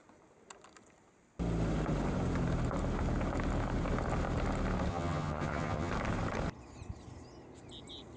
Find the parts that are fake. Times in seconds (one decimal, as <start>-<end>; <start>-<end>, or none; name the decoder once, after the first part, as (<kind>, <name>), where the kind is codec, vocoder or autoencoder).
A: 4.9-5.9 (vocoder, HiFi-GAN)